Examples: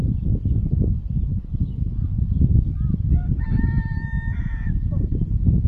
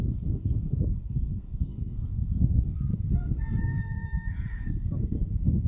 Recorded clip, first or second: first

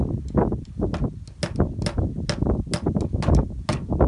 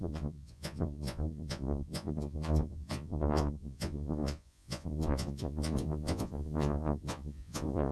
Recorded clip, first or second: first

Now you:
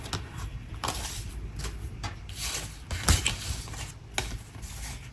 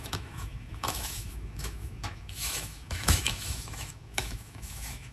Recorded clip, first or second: first